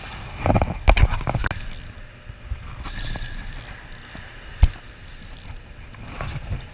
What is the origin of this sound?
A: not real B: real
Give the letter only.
B